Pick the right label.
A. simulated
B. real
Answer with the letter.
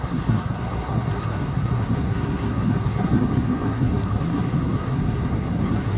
A